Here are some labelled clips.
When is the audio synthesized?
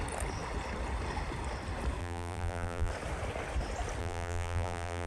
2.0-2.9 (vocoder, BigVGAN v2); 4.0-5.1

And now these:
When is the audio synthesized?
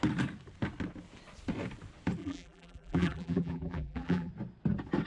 2.2-4.3 (vocoder, BigVGAN v2)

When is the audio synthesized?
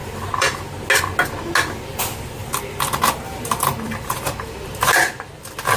0.0-0.6 (vocoder, BigVGAN v2); 2.4-5.1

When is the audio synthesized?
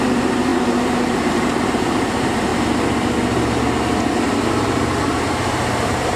0.0-2.5 (vocoder, BigVGAN v2); 4.5-6.2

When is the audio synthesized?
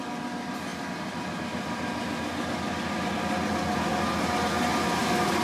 none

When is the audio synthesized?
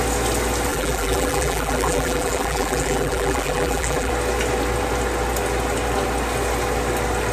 0.7-4.1 (vocoder, BigVGAN v2)